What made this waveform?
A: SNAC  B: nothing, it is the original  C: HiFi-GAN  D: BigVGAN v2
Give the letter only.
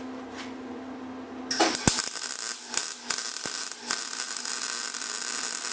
B